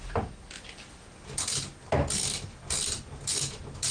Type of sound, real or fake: real